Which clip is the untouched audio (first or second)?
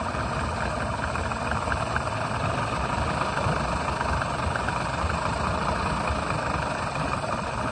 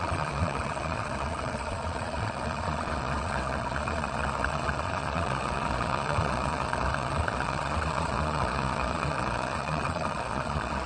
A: first